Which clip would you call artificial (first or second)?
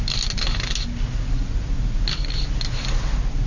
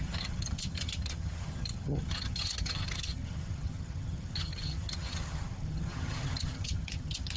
second